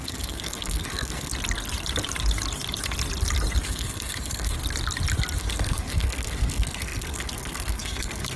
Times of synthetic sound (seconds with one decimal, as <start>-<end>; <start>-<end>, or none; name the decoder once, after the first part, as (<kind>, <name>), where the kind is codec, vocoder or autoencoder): 0.0-1.3 (codec, SNAC); 3.6-4.6; 5.4-8.4